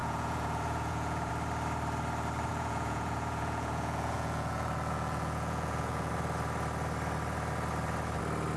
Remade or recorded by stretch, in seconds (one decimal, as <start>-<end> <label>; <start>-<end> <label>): 0.0-1.3 remade; 1.3-2.5 recorded; 2.5-6.1 remade; 6.1-8.6 recorded